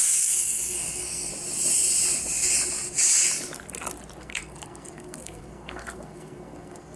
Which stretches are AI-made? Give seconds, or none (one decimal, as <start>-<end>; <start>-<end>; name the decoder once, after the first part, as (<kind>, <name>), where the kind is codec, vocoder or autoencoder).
0.0-1.3 (codec, SNAC); 4.2-7.0